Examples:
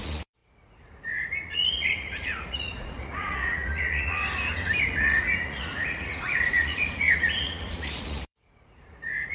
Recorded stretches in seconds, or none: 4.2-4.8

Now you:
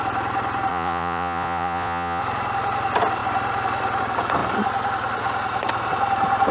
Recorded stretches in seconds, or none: 0.0-0.7; 2.2-6.5

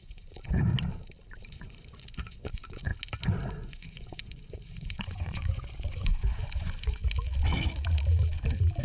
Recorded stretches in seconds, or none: 0.7-1.4; 2.9-3.5; 7.0-8.8

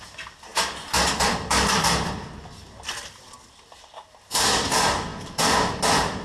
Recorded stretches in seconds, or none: 0.0-6.2